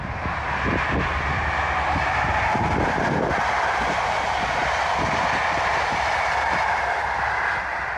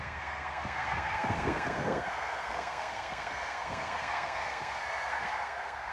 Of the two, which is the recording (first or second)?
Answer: first